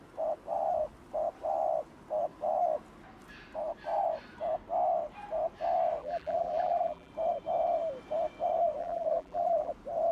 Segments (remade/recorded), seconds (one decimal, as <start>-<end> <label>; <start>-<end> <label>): 0.0-6.0 recorded; 6.0-7.1 remade; 7.1-8.8 recorded; 8.8-9.7 remade; 9.7-10.1 recorded